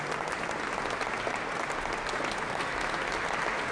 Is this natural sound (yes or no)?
yes